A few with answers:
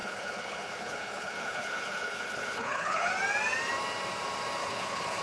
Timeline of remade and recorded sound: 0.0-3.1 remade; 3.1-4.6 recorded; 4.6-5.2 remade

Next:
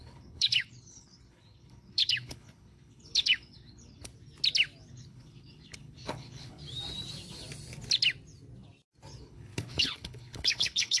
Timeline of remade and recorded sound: 0.0-4.1 remade; 4.1-4.9 recorded; 4.9-6.6 remade; 6.6-9.2 recorded; 9.2-11.0 remade

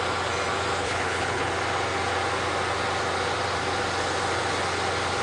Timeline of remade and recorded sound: 0.0-0.8 recorded; 0.8-1.5 remade; 1.5-5.2 recorded

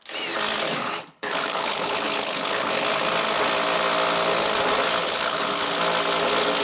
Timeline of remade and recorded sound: 0.0-0.8 recorded; 0.8-2.7 remade; 2.7-5.0 recorded; 5.0-5.8 remade; 5.8-6.6 recorded

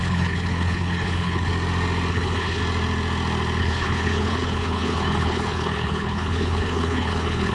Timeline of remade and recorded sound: 0.0-1.5 remade; 1.5-2.1 recorded; 2.1-2.6 remade; 2.6-3.6 recorded; 3.6-7.5 remade